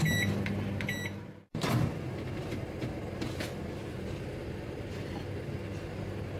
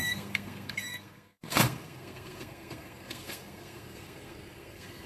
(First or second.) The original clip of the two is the first